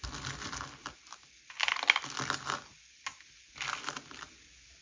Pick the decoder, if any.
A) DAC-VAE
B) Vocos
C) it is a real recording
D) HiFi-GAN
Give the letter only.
C